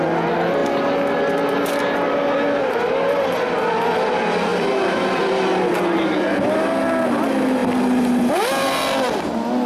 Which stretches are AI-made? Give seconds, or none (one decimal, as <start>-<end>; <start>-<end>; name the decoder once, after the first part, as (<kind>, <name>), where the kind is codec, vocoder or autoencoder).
4.5-5.8 (vocoder, BigVGAN v2)